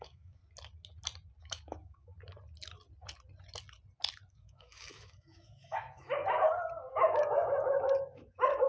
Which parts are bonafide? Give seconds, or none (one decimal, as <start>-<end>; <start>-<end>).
0.4-1.4; 2.1-4.3; 6.2-6.9